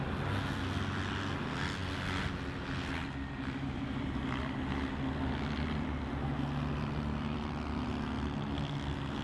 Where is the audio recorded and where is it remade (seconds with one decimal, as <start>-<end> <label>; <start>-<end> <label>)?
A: 0.0-9.2 recorded